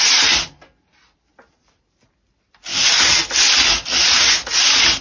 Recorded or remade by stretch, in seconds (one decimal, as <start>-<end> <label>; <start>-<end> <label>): 0.0-5.0 recorded